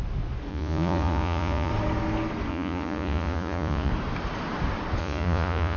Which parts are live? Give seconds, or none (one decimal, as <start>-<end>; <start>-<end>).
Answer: 0.0-0.5; 1.7-2.5; 3.9-5.0